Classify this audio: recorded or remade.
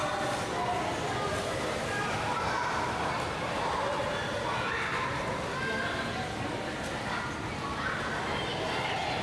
recorded